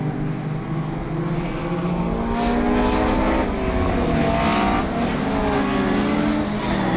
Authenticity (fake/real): real